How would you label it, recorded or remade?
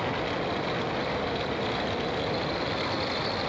recorded